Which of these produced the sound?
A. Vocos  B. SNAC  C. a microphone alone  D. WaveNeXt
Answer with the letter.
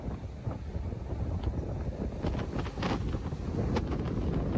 C